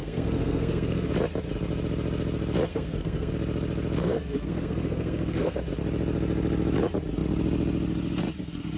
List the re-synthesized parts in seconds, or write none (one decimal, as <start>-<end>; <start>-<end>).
0.0-1.1; 2.7-3.3; 4.0-5.6